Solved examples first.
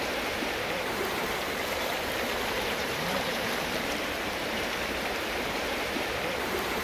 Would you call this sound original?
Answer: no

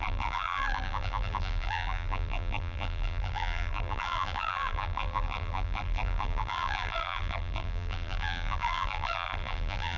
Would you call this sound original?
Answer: no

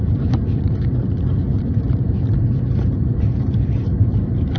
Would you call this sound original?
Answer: no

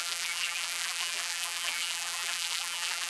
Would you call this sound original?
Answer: no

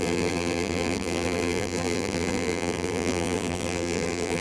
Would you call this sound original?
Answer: no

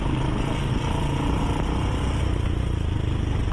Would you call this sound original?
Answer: yes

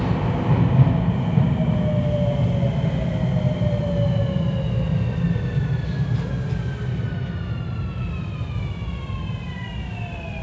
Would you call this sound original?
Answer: yes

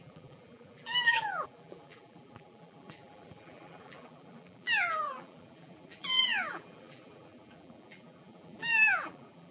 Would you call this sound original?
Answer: no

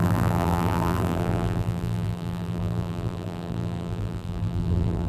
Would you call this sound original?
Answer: no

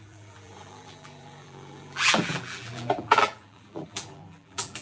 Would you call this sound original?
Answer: no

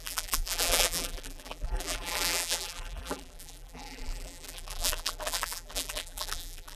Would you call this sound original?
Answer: no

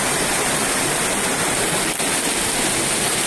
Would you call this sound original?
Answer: yes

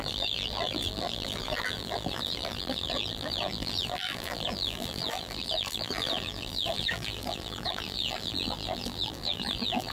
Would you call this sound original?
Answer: no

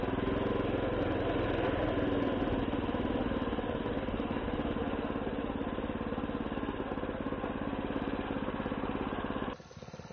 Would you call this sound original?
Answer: yes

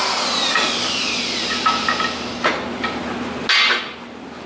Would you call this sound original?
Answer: yes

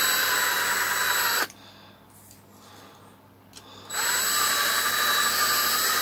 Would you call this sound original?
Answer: yes